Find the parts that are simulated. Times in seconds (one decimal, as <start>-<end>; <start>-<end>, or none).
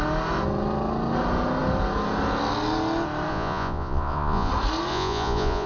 3.3-4.5; 4.9-5.7